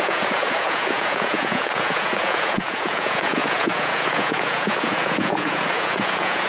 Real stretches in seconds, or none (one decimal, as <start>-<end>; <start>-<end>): none